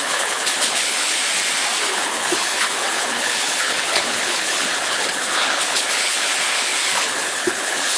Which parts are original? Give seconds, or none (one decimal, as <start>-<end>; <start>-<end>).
1.2-1.8